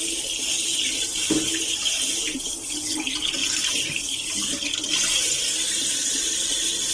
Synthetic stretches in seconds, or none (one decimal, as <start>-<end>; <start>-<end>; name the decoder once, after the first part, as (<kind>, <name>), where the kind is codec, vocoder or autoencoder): 3.4-4.3 (vocoder, BigVGAN v2)